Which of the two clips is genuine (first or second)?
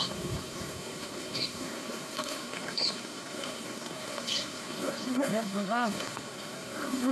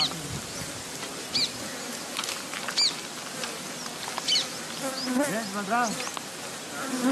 second